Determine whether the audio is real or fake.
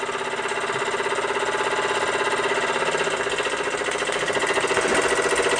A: real